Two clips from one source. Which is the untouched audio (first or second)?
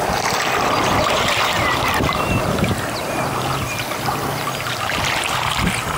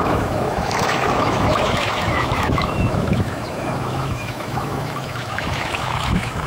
first